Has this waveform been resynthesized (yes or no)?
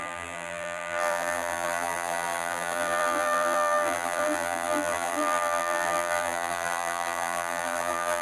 yes